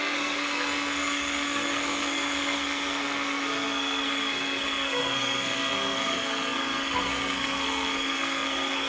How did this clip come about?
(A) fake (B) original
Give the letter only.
A